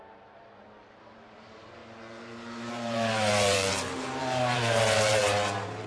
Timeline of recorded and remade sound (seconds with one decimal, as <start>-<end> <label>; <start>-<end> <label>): 0.0-1.8 remade; 1.8-2.7 recorded; 2.7-5.9 remade